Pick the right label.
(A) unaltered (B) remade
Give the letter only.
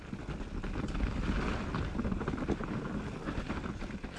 A